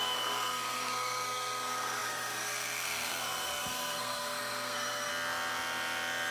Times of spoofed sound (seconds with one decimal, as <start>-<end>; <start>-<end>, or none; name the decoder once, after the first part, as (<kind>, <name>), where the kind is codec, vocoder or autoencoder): 0.0-5.1 (codec, SNAC)